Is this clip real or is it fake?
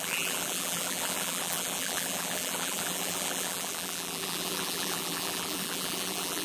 fake